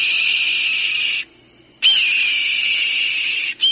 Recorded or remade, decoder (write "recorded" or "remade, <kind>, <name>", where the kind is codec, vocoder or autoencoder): recorded